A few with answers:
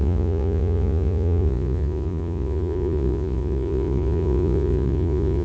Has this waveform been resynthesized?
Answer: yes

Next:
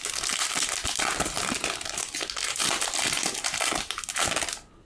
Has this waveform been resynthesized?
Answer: no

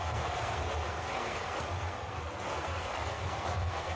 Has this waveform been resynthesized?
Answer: yes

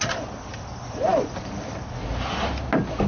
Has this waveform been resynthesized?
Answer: no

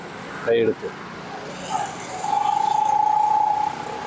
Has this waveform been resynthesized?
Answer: no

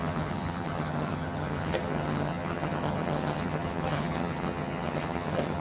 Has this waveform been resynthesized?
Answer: yes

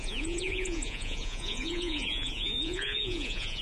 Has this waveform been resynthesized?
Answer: yes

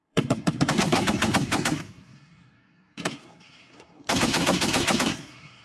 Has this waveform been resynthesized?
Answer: yes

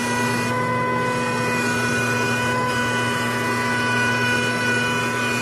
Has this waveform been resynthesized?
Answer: no